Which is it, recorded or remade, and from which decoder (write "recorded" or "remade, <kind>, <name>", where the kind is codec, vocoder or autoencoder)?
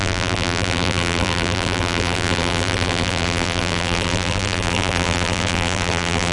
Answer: remade, vocoder, BigVGAN v2